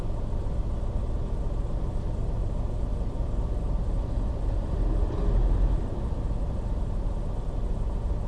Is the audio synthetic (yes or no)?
no